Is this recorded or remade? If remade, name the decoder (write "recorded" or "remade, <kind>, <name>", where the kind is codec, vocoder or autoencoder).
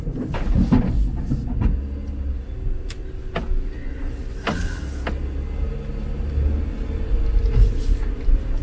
recorded